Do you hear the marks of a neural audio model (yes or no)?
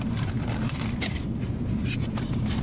yes